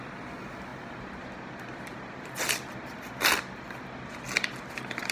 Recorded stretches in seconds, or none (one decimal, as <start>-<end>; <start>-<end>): 0.0-5.1